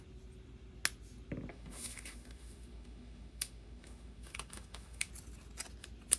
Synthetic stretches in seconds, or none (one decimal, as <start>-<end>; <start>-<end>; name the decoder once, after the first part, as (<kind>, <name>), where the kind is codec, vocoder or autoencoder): 1.5-5.1 (autoencoder, DAC-VAE)